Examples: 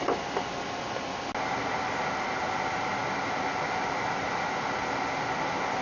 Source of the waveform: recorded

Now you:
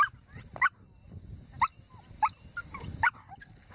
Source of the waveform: recorded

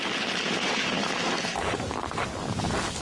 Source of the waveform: recorded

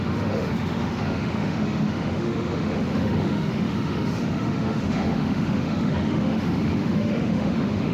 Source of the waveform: remade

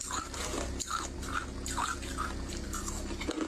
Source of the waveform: recorded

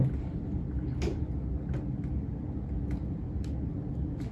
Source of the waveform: recorded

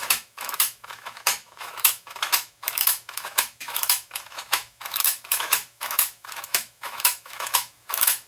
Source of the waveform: remade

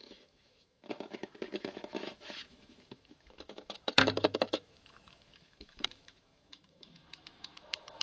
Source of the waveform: remade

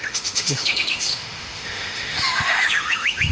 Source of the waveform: remade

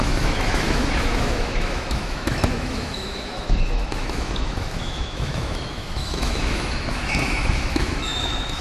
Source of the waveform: remade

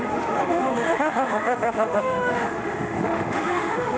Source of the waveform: remade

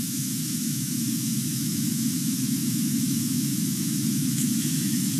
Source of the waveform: remade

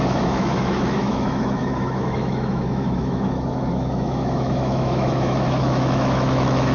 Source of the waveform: remade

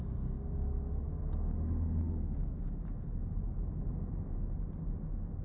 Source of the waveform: recorded